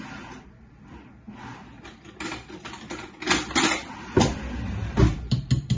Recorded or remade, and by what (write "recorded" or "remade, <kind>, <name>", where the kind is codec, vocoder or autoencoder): recorded